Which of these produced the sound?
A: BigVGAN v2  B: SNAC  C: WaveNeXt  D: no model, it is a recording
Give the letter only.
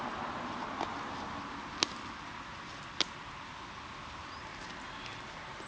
D